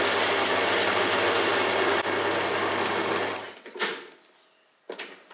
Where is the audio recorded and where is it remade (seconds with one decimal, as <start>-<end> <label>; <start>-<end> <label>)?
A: 0.0-5.3 recorded